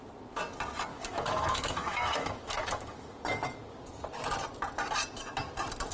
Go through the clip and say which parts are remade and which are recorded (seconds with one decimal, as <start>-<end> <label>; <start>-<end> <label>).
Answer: 0.0-0.9 recorded; 0.9-3.1 remade; 3.1-5.9 recorded